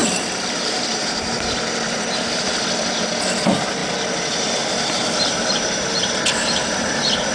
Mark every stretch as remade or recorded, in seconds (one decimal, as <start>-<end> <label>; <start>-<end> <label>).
0.0-7.3 remade